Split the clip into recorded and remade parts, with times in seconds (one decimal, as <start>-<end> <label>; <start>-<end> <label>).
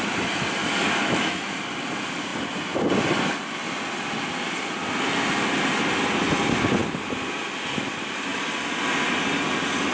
0.0-0.6 recorded; 0.6-1.5 remade; 1.5-9.9 recorded